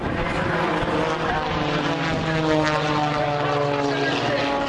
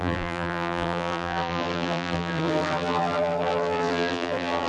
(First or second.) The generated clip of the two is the second